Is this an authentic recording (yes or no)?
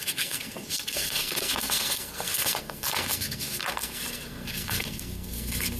no